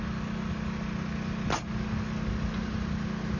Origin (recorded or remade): recorded